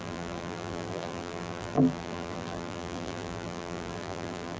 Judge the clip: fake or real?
fake